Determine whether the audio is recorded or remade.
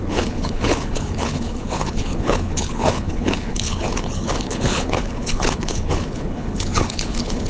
remade